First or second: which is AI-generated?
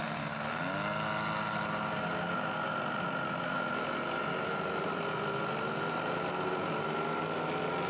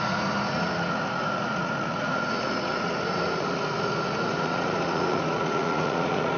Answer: second